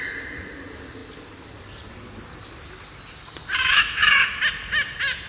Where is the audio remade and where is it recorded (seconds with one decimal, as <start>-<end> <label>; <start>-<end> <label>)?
0.0-3.6 recorded; 3.6-4.4 remade; 4.4-5.3 recorded